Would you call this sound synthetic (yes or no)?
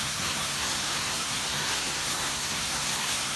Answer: yes